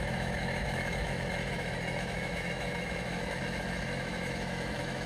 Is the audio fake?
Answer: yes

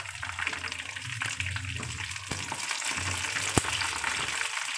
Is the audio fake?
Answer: no